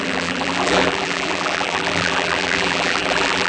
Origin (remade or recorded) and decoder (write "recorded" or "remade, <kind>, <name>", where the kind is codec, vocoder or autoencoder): remade, vocoder, BigVGAN v2